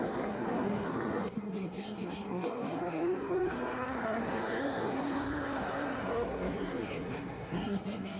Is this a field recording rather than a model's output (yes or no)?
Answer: no